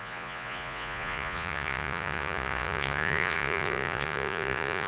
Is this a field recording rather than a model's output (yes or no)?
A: no